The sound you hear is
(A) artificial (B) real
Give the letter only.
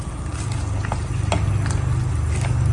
B